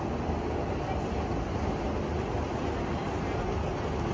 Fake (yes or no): no